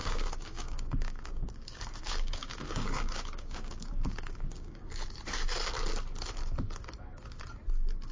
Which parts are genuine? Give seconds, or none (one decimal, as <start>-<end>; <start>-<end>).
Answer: 4.9-8.1